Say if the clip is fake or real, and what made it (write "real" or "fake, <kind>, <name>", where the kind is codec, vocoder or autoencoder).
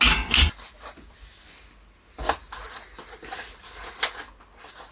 real